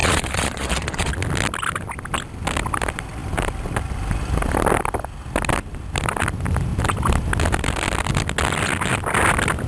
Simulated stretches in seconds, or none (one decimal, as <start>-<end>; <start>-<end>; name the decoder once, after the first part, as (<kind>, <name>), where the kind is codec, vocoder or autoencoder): 0.0-1.1 (vocoder, Vocos)